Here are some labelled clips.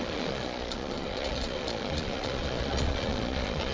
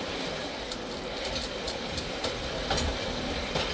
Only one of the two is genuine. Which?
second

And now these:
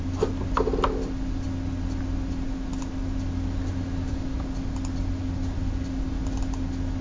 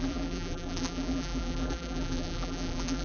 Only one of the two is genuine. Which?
first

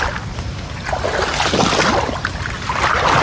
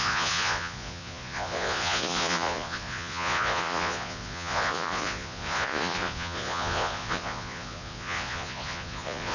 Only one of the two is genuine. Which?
first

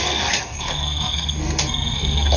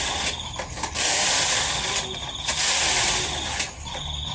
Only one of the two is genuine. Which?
second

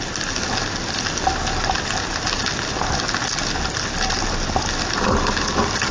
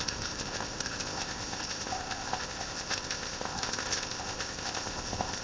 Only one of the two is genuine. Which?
first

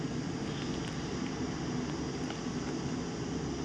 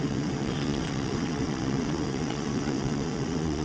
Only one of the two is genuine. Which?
first